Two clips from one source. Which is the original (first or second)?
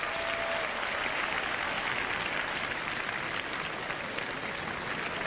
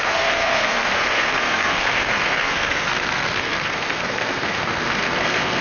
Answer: first